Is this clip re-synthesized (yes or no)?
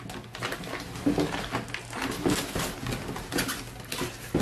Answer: no